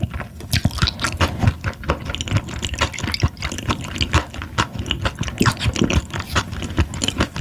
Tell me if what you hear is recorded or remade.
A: recorded